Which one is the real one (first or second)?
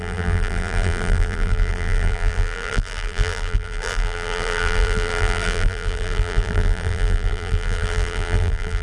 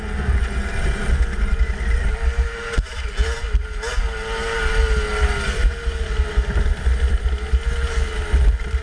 second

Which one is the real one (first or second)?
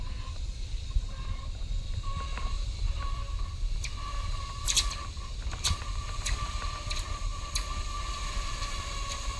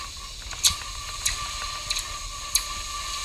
second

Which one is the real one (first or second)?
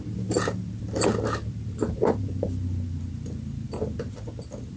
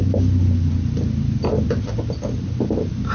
second